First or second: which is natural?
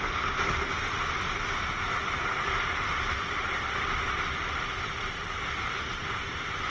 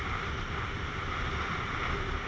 second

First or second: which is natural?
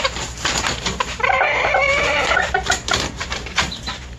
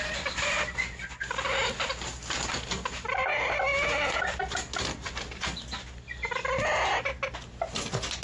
second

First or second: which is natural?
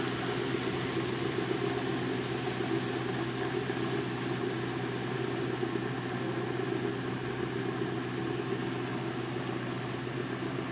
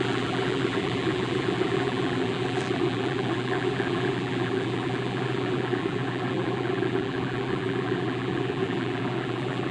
first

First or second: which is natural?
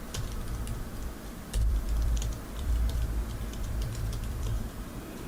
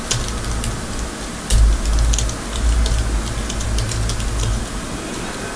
second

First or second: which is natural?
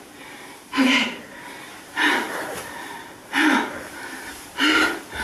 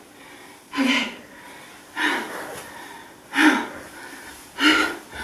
second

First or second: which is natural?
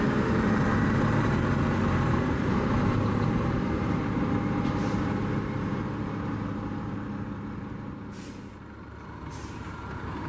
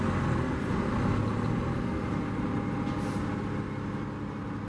second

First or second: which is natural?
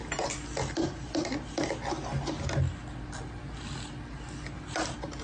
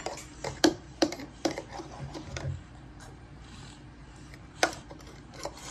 first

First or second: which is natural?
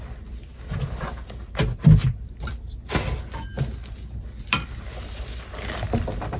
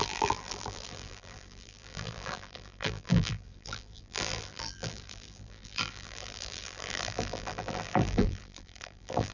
first